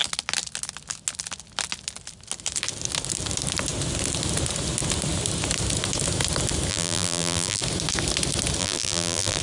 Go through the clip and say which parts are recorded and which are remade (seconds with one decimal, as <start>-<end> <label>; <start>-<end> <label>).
0.0-6.7 recorded; 6.7-7.6 remade; 7.6-8.6 recorded; 8.6-9.4 remade